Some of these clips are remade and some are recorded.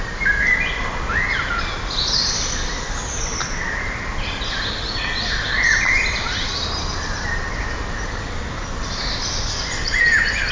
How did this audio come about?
recorded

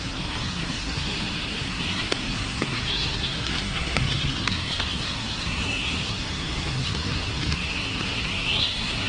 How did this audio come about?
remade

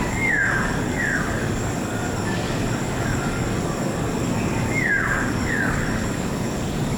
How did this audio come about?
remade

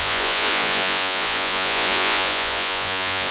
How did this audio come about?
remade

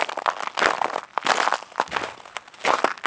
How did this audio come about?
recorded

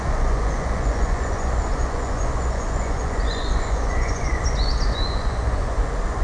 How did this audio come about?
remade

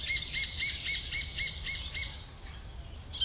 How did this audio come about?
recorded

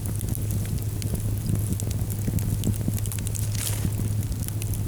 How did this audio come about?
recorded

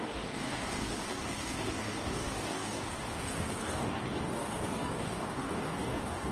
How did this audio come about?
remade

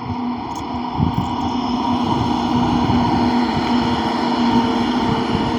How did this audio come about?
recorded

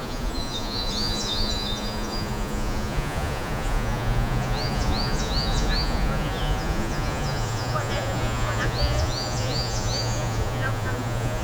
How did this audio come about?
remade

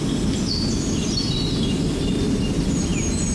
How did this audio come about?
recorded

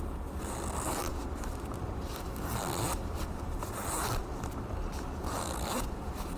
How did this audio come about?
recorded